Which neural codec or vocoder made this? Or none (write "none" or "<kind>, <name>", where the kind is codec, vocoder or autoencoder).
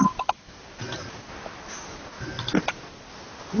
none